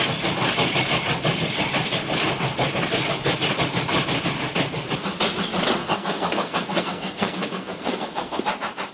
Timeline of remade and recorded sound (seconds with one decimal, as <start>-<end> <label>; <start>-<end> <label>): 0.0-5.8 recorded; 5.8-8.4 remade; 8.4-8.9 recorded